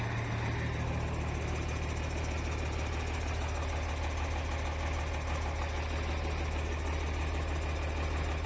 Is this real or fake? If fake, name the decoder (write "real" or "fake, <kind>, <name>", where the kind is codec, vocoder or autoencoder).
real